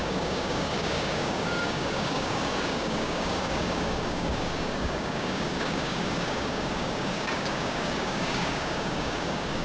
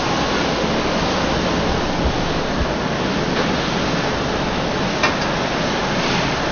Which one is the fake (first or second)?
first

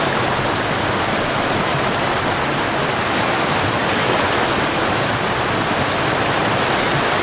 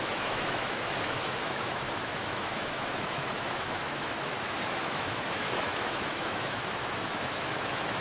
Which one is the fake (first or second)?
second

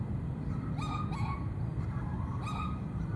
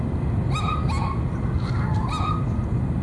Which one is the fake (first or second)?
first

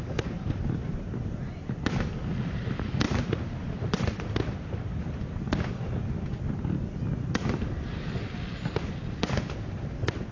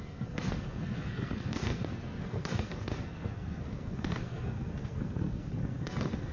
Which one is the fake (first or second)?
second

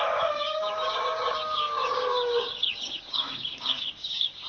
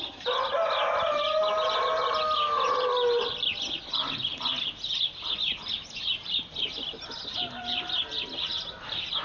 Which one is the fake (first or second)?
first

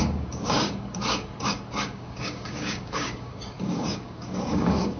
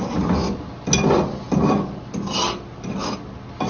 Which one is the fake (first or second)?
first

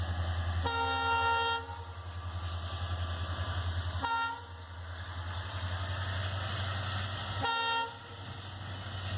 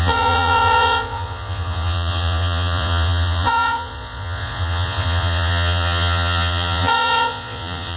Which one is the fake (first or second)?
second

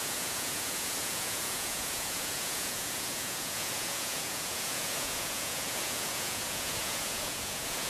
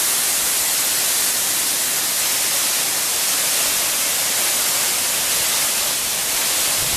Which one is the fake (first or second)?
first